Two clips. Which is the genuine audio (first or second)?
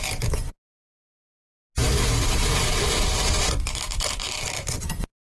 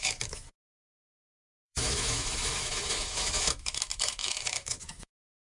first